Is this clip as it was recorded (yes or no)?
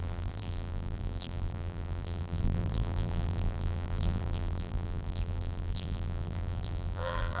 no